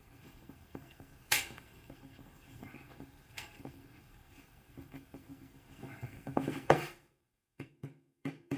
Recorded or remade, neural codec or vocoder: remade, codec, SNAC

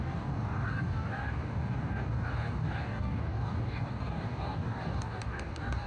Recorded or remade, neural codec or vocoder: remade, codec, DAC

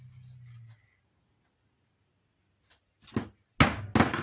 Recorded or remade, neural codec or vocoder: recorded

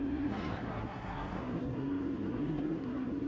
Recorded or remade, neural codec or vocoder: remade, codec, SNAC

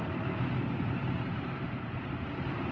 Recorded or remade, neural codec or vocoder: recorded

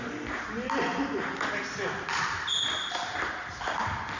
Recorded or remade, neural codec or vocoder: recorded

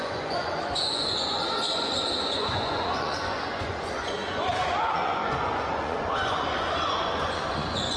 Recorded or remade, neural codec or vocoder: remade, vocoder, Vocos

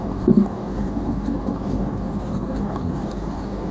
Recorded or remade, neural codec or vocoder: remade, codec, DAC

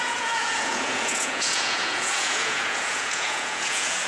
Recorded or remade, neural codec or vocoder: remade, vocoder, Vocos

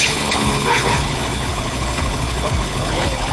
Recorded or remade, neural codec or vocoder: remade, codec, HILCodec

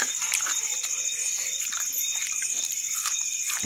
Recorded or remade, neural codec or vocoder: remade, vocoder, BigVGAN v2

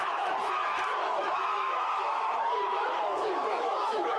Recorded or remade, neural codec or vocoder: remade, autoencoder, DAC-VAE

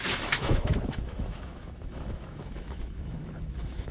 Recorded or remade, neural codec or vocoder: remade, autoencoder, DAC-VAE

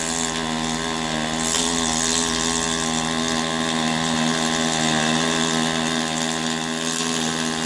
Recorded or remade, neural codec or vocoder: recorded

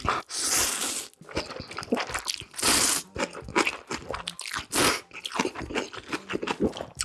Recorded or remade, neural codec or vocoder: recorded